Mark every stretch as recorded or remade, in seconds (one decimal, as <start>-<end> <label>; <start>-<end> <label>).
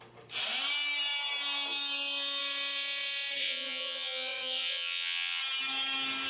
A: 0.0-3.4 recorded; 3.4-5.4 remade; 5.4-6.3 recorded